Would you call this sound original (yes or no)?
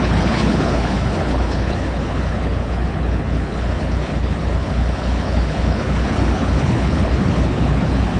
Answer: no